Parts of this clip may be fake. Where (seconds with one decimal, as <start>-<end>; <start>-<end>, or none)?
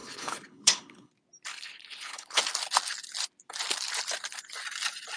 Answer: 0.0-1.1; 1.5-2.4